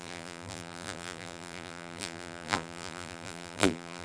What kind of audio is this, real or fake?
fake